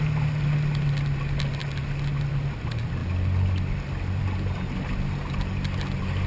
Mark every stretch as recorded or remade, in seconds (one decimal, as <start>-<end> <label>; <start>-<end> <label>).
0.0-6.3 recorded